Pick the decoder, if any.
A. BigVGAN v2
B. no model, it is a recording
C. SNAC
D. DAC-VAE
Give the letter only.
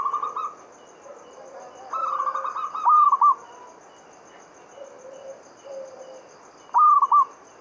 B